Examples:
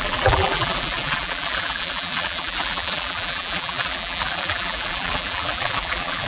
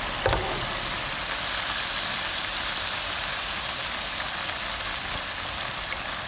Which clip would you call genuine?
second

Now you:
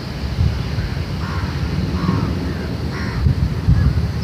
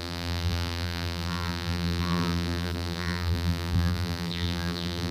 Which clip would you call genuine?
first